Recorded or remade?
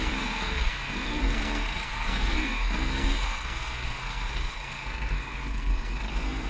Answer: remade